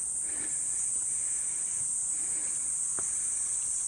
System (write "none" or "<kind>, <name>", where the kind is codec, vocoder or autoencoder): none